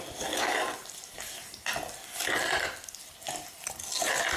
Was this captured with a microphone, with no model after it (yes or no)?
yes